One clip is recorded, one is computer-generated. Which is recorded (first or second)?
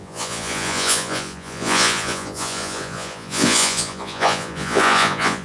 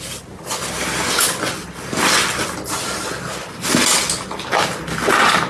second